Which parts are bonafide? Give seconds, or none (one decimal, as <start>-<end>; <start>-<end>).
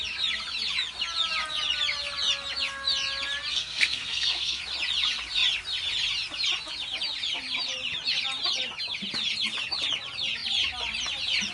0.0-3.5; 4.6-11.5